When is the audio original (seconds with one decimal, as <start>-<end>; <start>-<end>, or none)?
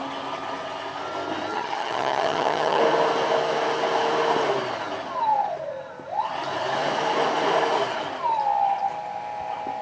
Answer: 0.0-1.5; 2.8-9.8